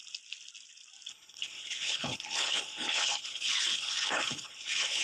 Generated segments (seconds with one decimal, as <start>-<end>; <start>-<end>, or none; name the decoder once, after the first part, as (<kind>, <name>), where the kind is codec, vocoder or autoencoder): 1.1-5.0 (codec, HILCodec)